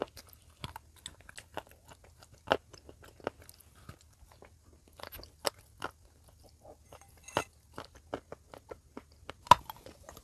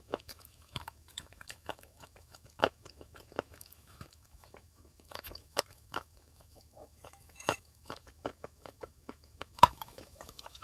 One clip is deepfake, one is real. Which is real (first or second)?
first